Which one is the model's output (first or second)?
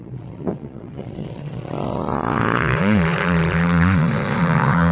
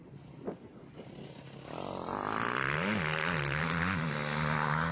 first